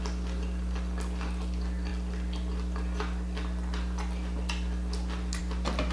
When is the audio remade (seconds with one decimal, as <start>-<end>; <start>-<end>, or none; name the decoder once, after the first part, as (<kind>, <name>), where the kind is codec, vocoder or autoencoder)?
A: none